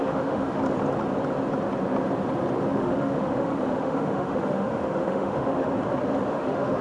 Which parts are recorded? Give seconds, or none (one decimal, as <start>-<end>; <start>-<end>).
0.6-2.7; 5.7-6.3